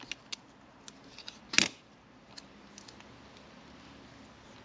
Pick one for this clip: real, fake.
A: real